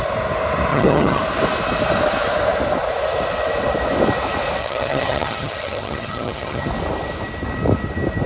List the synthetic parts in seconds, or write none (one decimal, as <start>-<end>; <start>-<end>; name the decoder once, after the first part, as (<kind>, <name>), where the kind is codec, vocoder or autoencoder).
0.7-1.2 (vocoder, HiFi-GAN); 4.6-6.7